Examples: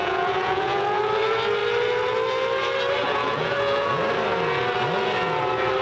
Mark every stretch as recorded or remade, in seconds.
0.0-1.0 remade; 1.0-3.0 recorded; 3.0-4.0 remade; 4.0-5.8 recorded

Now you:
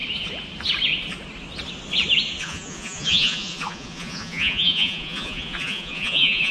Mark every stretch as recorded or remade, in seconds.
0.0-2.4 recorded; 2.4-6.5 remade

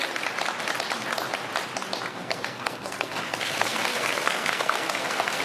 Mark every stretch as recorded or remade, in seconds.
0.0-2.1 recorded; 2.1-5.4 remade

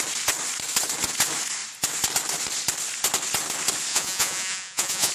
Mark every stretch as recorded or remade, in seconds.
0.0-3.9 recorded; 3.9-5.1 remade

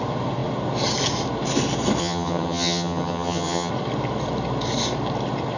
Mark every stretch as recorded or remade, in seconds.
0.0-2.0 recorded; 2.0-3.7 remade; 3.7-5.6 recorded